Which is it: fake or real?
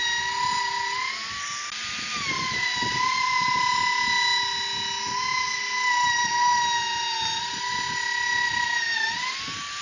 real